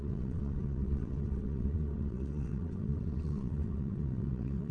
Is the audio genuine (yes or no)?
no